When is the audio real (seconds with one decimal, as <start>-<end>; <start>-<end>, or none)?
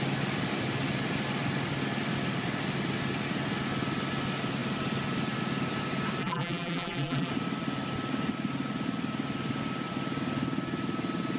0.0-6.2; 7.3-11.4